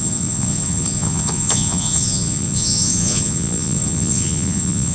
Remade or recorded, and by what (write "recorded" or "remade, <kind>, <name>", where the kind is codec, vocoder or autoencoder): remade, vocoder, Vocos